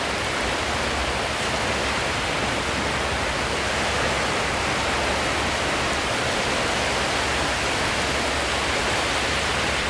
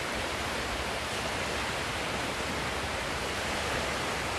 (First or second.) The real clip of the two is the first